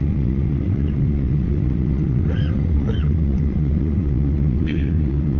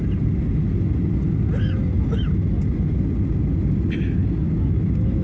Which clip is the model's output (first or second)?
first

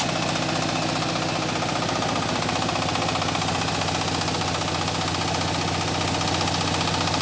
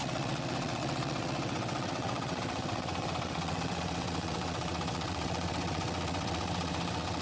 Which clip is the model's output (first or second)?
second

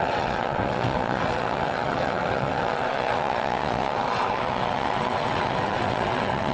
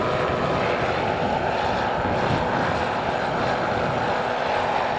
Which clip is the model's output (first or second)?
first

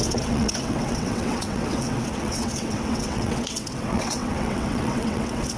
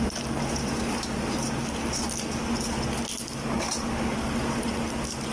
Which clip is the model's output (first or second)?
first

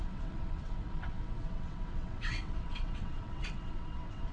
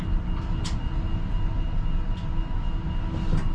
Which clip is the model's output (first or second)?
first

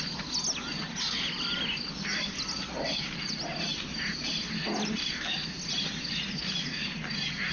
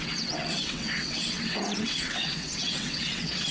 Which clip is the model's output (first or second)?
second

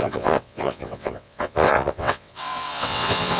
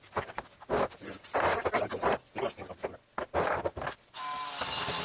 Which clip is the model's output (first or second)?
first